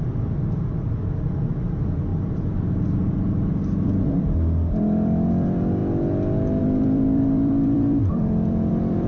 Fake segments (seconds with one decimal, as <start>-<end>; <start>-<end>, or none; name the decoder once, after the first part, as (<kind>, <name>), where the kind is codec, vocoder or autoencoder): 0.0-5.8 (vocoder, BigVGAN v2); 6.6-9.1